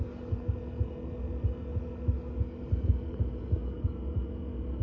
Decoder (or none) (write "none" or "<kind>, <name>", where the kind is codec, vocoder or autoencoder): none